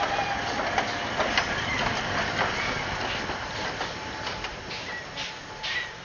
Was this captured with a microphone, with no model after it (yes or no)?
yes